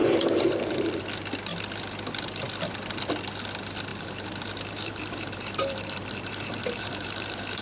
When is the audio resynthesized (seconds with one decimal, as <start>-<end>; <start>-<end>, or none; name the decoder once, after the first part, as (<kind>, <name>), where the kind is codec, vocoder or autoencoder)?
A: 0.0-1.0 (vocoder, BigVGAN v2); 3.9-7.6